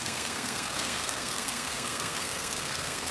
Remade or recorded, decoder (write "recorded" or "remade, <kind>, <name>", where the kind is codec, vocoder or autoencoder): remade, codec, SNAC